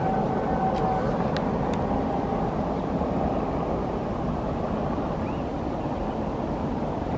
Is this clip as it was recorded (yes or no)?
yes